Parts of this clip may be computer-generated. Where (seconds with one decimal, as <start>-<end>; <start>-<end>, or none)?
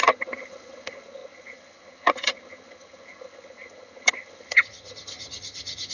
0.0-5.9